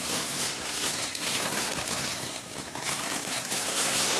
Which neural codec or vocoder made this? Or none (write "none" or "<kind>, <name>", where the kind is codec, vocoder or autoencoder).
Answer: codec, SNAC